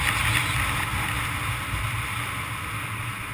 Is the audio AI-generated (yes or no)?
no